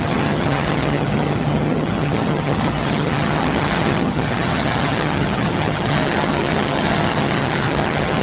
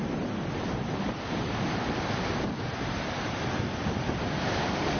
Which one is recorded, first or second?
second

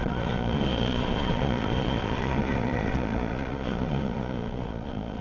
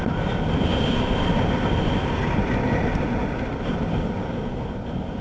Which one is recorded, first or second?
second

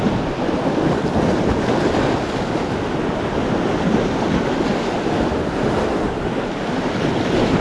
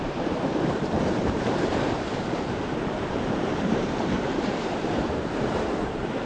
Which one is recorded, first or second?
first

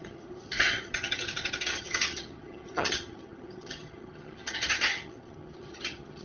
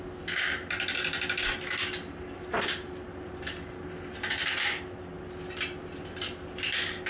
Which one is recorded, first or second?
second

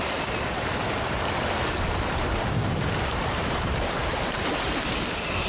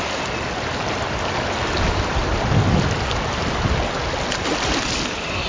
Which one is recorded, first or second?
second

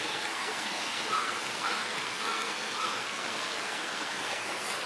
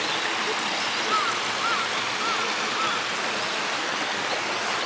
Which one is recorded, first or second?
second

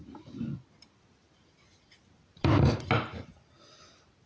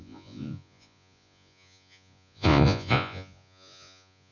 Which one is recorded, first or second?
first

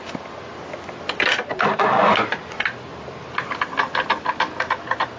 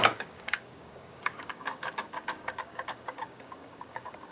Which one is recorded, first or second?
first